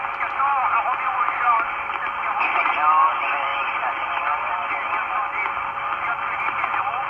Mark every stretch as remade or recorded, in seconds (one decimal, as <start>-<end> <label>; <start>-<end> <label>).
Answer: 0.0-7.1 remade